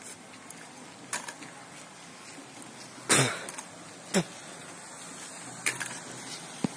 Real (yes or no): yes